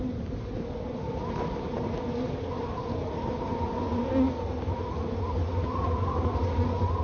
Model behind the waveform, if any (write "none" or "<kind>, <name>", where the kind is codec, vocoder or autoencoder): none